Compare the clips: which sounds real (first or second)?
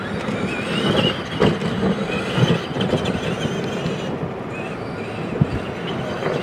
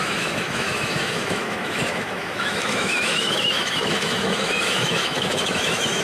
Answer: first